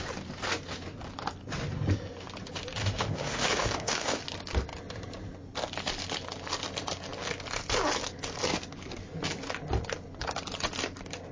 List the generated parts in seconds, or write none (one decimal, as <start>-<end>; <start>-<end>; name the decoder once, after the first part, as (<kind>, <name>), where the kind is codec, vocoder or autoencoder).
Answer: 2.8-4.2 (autoencoder, DAC-VAE)